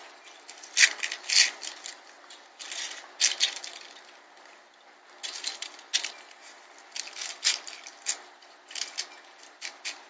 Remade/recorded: recorded